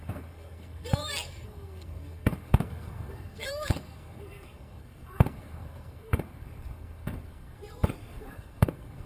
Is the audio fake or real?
fake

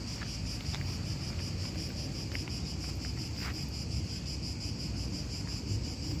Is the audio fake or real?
real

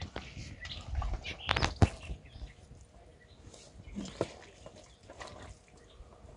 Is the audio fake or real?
real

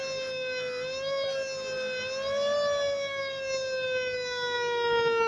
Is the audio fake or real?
real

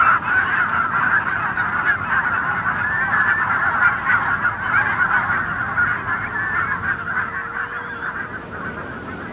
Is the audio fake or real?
real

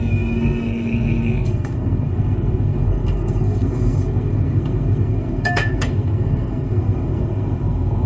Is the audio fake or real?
fake